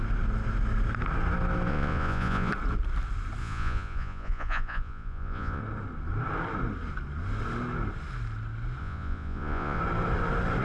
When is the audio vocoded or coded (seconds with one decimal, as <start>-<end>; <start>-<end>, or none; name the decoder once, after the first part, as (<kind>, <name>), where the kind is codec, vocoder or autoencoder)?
1.7-2.5 (vocoder, Vocos); 3.4-5.6; 8.8-9.8

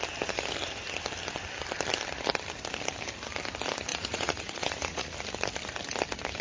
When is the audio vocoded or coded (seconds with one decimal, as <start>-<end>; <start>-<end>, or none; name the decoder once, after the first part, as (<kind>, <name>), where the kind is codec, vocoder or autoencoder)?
3.9-5.1 (vocoder, Vocos)

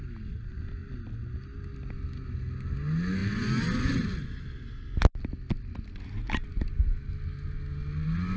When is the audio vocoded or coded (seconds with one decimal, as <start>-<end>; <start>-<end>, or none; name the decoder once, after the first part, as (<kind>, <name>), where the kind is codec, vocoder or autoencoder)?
none

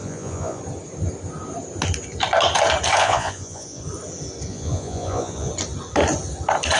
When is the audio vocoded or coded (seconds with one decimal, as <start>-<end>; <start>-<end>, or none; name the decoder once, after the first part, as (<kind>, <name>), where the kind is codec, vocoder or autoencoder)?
0.0-0.6 (vocoder, Vocos); 3.0-3.8; 4.5-5.5

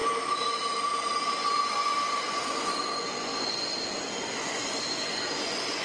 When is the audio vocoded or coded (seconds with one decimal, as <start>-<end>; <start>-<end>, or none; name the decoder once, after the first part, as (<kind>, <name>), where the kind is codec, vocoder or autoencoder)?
1.2-5.8 (vocoder, Vocos)

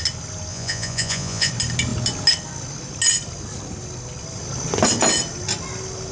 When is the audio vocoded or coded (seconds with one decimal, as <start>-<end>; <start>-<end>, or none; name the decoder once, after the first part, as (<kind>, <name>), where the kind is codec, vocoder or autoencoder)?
0.5-1.5 (vocoder, Vocos)